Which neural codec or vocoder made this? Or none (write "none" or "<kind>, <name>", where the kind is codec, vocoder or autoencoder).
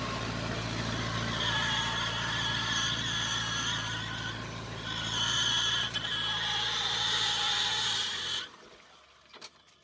none